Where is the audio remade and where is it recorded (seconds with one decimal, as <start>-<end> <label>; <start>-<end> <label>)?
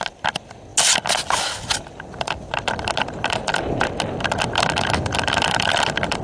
0.0-6.2 recorded